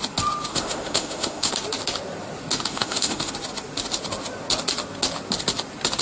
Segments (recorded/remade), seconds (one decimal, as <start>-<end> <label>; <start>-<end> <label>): 0.0-0.5 recorded; 0.5-1.5 remade; 1.5-2.7 recorded; 2.7-3.3 remade; 3.3-6.0 recorded